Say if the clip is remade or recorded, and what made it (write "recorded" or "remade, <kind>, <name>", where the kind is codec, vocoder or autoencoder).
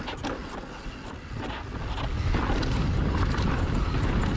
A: recorded